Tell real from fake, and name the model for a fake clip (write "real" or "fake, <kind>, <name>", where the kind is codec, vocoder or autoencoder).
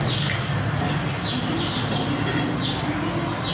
real